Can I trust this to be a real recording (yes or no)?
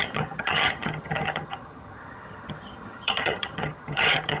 no